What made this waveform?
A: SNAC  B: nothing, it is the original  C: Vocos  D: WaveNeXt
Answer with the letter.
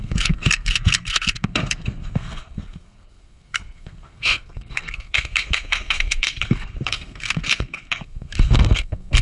A